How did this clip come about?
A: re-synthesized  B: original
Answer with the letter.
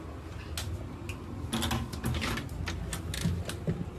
B